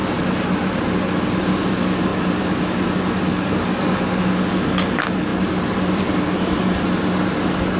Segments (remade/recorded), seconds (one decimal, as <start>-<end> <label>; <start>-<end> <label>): 0.0-3.3 recorded; 3.3-4.0 remade; 4.0-7.8 recorded

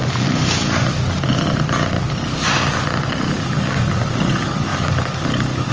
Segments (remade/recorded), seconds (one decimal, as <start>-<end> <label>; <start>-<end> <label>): 0.0-3.4 recorded; 3.4-5.7 remade